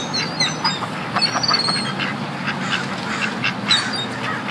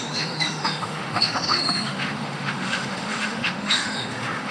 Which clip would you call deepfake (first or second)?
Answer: second